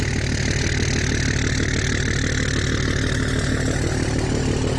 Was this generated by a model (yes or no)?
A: no